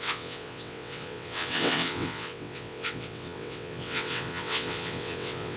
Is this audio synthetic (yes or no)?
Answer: yes